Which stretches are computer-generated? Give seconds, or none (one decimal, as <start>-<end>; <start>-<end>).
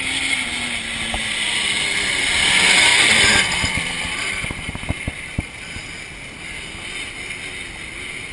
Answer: 2.9-5.8